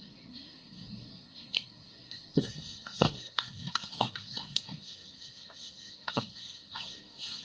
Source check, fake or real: fake